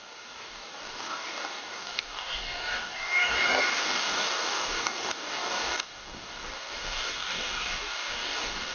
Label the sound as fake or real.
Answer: fake